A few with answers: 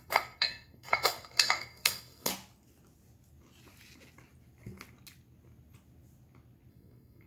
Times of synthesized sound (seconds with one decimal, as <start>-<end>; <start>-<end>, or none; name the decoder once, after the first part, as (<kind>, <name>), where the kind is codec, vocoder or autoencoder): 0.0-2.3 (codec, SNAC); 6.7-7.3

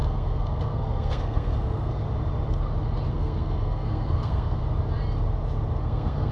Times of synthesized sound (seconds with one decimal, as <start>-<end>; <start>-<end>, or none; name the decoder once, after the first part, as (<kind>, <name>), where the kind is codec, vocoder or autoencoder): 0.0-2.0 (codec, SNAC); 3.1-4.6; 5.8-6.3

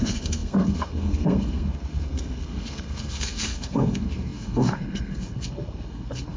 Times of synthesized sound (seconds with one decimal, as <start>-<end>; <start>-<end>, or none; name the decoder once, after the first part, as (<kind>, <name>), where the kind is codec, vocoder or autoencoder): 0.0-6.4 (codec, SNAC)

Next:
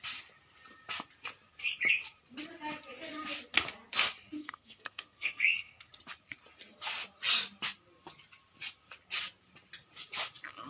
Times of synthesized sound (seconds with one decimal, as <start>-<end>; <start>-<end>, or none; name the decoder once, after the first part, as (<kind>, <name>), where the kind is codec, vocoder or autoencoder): 4.4-5.9 (codec, SNAC)

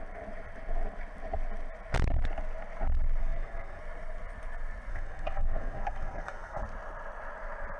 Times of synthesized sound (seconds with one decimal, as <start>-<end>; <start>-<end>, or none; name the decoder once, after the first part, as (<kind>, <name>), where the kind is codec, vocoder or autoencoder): 3.2-3.8 (codec, SNAC); 4.9-6.6

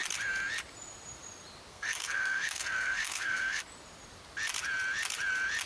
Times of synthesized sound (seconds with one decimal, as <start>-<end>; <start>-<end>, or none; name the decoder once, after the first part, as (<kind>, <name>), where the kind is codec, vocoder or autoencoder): 1.7-3.6 (codec, SNAC)